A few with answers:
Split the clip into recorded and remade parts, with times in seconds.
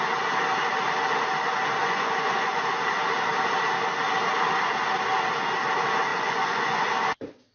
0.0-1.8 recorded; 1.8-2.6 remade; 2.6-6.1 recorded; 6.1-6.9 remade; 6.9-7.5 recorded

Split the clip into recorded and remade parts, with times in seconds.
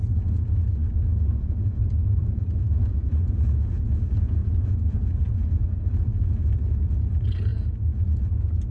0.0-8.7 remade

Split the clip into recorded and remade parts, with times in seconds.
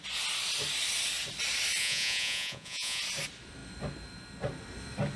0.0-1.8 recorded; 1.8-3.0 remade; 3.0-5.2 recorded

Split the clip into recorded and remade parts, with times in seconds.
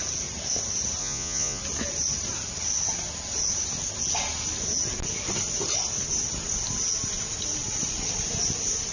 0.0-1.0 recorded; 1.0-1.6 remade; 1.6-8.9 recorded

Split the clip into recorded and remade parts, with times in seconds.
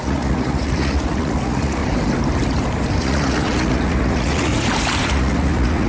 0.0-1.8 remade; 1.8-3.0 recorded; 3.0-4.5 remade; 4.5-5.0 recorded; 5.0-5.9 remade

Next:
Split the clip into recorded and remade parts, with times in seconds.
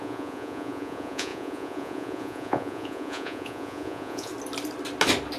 0.0-4.3 remade; 4.3-5.4 recorded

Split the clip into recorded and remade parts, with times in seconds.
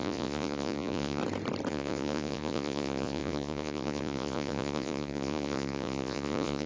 0.0-1.2 remade; 1.2-1.7 recorded; 1.7-6.7 remade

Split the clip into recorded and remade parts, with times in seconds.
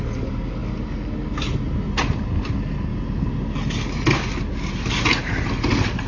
0.0-6.1 recorded